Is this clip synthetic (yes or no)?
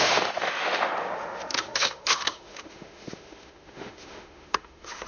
yes